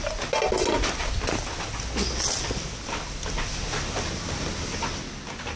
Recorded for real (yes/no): yes